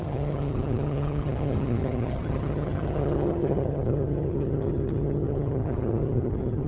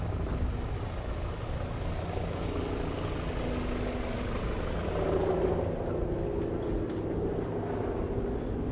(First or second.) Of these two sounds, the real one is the second